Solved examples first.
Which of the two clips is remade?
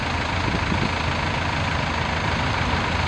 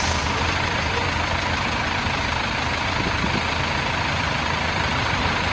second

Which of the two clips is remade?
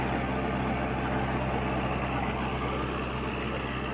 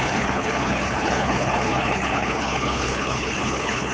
second